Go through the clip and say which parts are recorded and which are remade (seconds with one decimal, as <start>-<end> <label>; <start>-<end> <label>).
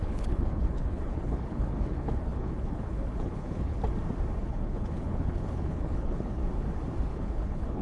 0.0-3.8 remade; 3.8-4.4 recorded; 4.4-6.4 remade; 6.4-7.1 recorded; 7.1-7.8 remade